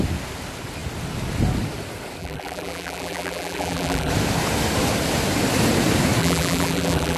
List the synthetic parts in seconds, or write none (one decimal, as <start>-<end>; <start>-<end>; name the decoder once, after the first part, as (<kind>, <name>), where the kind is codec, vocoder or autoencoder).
2.2-4.1 (vocoder, BigVGAN v2); 6.2-7.2